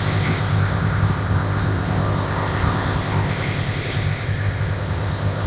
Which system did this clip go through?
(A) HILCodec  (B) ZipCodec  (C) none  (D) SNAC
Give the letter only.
B